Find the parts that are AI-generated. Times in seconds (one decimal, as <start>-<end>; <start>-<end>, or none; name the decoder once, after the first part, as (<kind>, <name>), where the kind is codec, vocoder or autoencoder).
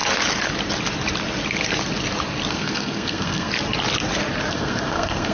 2.5-3.5 (codec, SNAC); 4.5-5.3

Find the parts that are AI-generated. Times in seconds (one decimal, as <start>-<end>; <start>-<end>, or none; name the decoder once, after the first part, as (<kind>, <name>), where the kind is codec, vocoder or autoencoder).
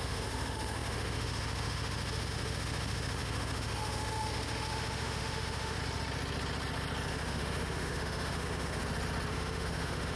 0.0-5.8 (autoencoder, DAC-VAE); 7.1-8.8; 9.3-10.2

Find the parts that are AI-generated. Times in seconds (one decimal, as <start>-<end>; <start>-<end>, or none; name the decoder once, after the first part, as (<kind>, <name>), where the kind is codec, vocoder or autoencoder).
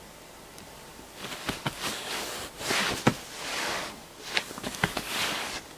0.9-2.3 (codec, DAC); 3.5-5.8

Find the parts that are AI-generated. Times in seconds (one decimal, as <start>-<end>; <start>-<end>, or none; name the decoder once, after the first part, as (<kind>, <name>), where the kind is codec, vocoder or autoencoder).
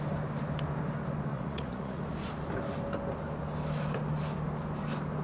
1.3-2.0 (vocoder, Vocos)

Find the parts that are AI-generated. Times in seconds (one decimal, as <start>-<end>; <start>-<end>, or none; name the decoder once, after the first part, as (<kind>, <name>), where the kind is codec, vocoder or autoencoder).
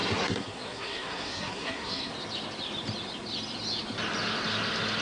0.0-2.1 (codec, SNAC)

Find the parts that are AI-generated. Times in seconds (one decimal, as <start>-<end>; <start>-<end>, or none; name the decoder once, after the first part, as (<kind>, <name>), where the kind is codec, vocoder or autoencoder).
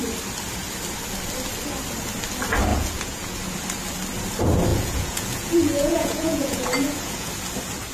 2.7-3.4 (vocoder, Vocos); 4.7-7.3